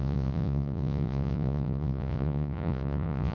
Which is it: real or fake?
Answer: fake